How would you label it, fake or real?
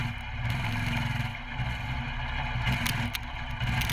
real